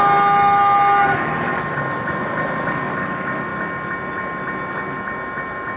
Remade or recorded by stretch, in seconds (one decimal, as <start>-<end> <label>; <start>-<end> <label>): 0.0-5.8 recorded